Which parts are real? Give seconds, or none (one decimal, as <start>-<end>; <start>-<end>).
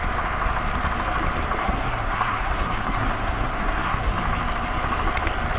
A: 0.0-1.6; 4.1-5.6